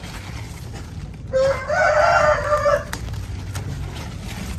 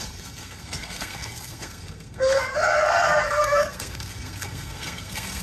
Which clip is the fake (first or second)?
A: second